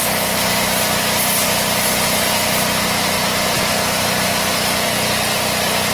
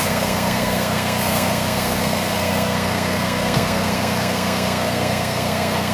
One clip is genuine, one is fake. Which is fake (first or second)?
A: second